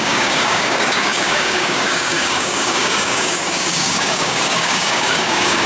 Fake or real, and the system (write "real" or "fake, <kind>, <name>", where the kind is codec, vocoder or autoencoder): fake, codec, DAC